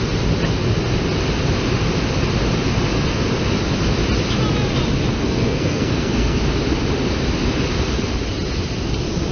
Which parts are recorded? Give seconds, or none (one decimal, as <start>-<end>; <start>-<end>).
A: 0.0-5.1; 6.4-9.3